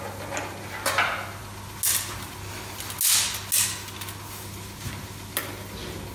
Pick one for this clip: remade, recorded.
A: recorded